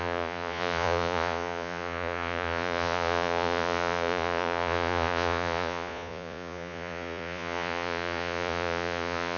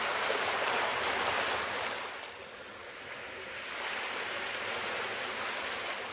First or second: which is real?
second